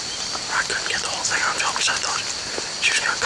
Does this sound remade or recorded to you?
recorded